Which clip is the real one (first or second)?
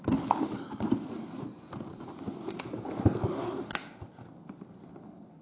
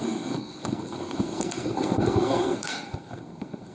first